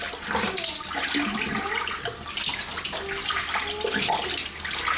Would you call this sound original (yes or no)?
yes